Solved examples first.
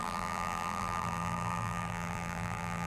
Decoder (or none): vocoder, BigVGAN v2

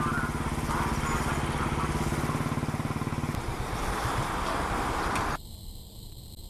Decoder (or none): none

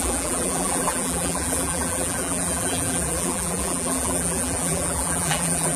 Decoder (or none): vocoder, BigVGAN v2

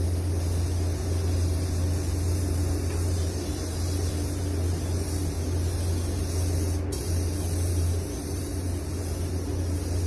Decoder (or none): none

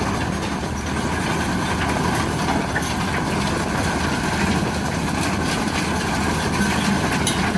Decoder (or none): none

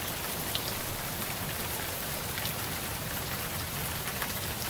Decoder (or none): vocoder, BigVGAN v2